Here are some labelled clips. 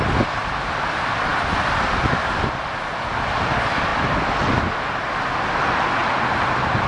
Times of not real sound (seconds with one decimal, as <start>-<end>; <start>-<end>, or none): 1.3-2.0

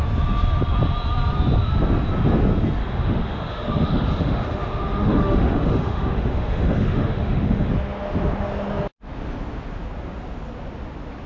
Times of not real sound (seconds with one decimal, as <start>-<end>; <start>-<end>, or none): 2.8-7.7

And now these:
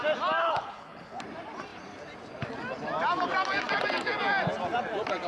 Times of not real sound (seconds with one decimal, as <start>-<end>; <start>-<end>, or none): 0.4-1.2